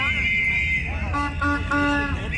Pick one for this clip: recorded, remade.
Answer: recorded